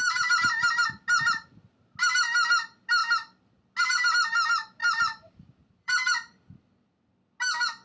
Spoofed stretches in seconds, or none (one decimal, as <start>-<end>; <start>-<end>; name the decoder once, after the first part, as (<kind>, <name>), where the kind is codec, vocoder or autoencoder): 4.8-5.9 (vocoder, BigVGAN v2)